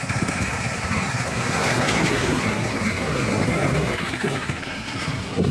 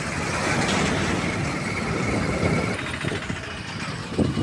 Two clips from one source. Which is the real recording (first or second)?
second